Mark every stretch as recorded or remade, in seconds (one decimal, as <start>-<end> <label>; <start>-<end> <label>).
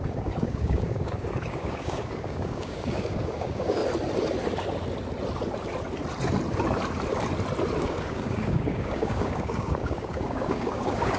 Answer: 0.0-3.8 remade; 3.8-7.8 recorded; 7.8-11.2 remade